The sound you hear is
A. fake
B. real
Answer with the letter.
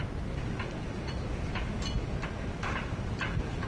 B